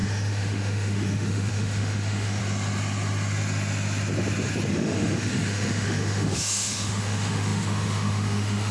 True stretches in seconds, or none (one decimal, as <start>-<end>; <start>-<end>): 2.4-4.7